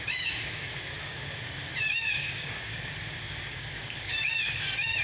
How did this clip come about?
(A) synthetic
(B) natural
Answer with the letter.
A